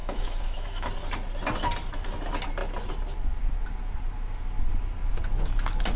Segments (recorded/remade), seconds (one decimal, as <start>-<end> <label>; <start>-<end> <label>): 0.0-0.9 remade; 0.9-6.0 recorded